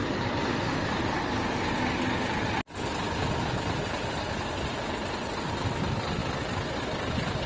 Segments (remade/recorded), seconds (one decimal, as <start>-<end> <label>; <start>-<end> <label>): 0.0-1.7 remade; 1.7-4.7 recorded; 4.7-5.7 remade; 5.7-7.5 recorded